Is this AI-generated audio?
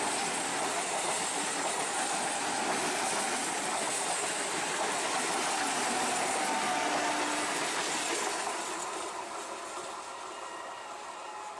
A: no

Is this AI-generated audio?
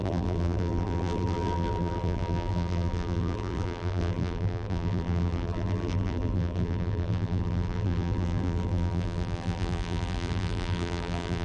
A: yes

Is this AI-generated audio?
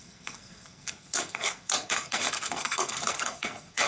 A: yes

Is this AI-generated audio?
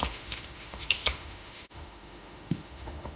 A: yes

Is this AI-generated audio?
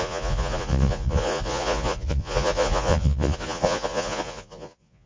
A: yes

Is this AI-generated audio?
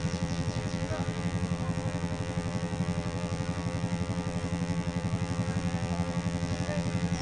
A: yes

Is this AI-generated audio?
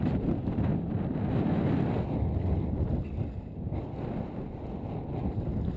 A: no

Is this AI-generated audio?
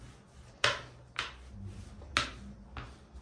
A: no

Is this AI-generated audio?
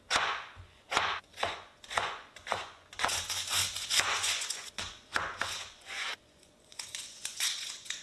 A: yes